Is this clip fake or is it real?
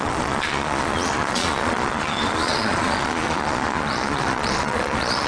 fake